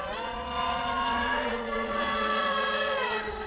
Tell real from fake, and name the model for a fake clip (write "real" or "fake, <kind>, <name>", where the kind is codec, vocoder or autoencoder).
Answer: fake, vocoder, Vocos